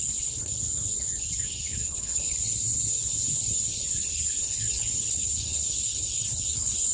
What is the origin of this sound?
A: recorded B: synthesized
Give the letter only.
B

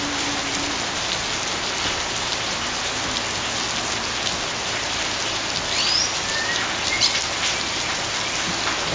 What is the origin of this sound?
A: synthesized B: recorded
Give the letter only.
B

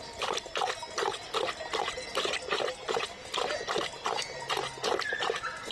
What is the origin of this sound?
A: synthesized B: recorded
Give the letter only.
B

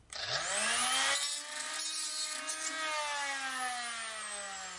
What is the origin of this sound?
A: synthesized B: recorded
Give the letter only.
B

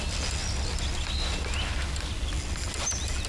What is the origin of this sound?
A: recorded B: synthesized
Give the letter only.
A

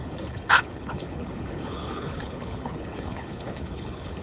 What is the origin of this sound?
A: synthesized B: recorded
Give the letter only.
A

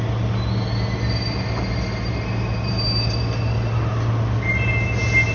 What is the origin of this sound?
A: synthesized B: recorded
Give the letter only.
B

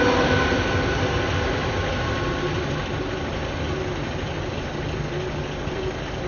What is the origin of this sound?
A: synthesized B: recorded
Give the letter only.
B